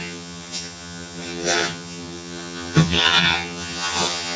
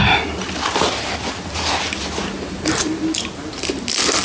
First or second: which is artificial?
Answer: first